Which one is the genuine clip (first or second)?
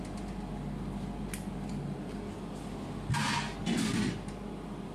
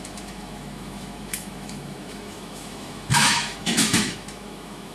first